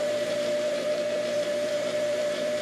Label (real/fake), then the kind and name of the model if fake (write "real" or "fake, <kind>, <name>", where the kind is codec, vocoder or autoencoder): fake, vocoder, BigVGAN v2